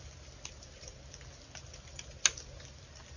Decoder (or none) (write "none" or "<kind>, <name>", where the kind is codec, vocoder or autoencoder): none